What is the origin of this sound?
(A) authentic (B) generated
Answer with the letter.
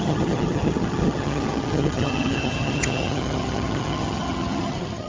B